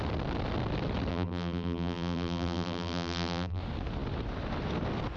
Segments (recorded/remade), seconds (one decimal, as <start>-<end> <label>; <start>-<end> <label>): 0.0-1.1 recorded; 1.1-3.6 remade; 3.6-5.2 recorded